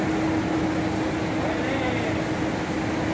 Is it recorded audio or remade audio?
recorded